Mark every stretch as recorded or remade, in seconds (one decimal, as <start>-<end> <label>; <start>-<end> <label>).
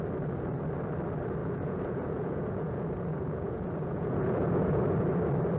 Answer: 0.0-1.4 recorded; 1.4-4.8 remade; 4.8-5.6 recorded